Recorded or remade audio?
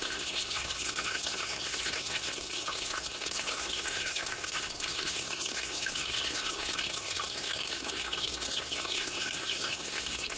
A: remade